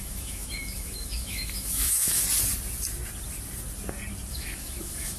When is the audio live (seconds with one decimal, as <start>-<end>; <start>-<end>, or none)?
2.2-4.3

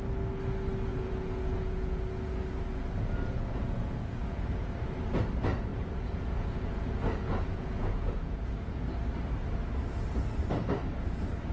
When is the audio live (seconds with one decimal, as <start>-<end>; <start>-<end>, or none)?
0.0-0.9; 4.7-5.7; 8.8-11.5

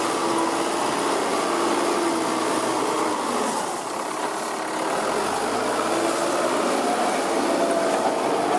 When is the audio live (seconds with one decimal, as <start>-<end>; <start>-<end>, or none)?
0.0-8.6

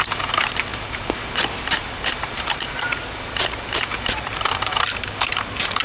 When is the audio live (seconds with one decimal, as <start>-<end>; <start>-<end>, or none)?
none

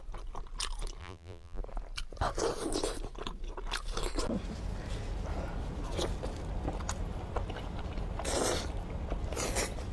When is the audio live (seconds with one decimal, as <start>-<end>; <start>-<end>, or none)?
0.0-1.0; 1.6-9.9

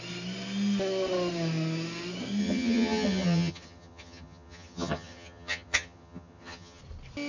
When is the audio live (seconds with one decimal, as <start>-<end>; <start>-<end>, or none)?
0.0-2.4; 6.8-7.3